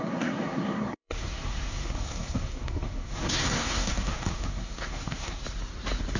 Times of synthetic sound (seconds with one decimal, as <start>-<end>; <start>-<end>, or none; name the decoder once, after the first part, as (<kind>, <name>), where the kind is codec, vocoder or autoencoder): 0.0-5.4 (codec, SNAC)